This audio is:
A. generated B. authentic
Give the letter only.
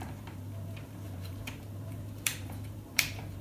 A